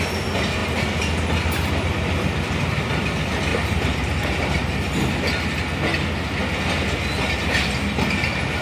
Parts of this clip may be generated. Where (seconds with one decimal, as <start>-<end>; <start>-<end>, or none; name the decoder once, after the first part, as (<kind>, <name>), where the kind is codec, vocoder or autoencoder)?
3.5-4.7 (vocoder, BigVGAN v2)